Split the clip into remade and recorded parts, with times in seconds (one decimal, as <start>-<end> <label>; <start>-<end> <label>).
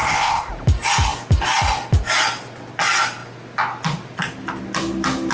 0.0-0.5 remade; 0.5-5.3 recorded